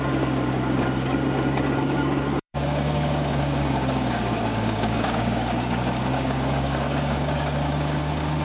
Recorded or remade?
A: remade